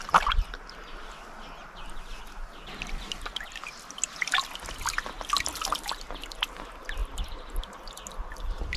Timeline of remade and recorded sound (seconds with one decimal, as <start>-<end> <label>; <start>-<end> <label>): 0.0-8.8 recorded

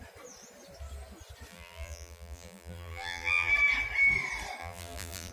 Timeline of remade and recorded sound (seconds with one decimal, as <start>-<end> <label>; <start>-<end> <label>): 0.0-1.5 recorded; 1.5-3.5 remade; 3.5-4.6 recorded; 4.6-5.3 remade